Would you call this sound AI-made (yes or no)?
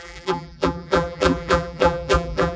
yes